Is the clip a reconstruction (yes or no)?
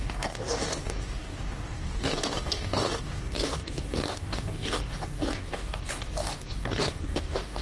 yes